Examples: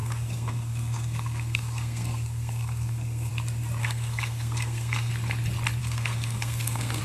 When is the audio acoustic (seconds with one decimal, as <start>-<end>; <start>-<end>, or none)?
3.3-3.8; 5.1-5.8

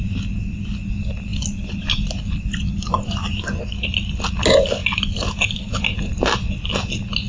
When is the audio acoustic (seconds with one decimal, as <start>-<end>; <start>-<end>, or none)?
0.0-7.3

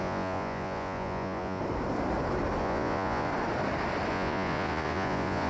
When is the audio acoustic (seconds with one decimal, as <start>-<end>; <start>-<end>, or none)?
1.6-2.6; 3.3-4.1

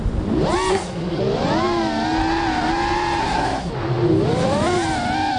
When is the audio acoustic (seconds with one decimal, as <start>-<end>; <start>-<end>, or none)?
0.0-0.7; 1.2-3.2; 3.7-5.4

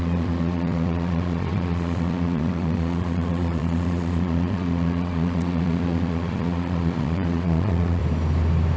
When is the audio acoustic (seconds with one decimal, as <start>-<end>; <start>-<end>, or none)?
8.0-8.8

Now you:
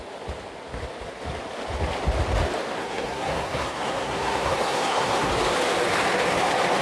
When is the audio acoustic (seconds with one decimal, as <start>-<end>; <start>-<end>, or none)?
0.0-2.8; 5.3-6.8

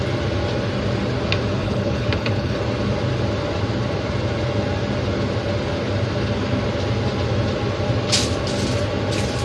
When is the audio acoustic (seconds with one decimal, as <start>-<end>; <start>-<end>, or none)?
0.0-1.6; 2.6-9.4